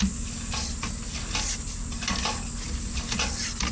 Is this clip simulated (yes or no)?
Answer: no